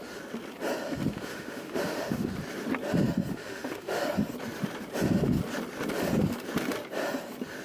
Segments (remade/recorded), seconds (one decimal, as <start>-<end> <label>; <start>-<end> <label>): 0.0-1.1 recorded; 1.1-2.3 remade; 2.3-3.3 recorded; 3.3-4.0 remade; 4.0-7.6 recorded